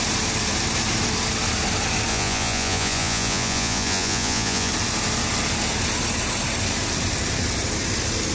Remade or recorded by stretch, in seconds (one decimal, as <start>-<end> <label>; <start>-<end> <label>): 0.0-2.1 recorded; 2.1-4.7 remade; 4.7-8.3 recorded